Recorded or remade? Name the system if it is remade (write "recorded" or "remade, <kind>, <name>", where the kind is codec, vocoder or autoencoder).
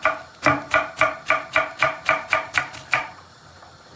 remade, vocoder, BigVGAN v2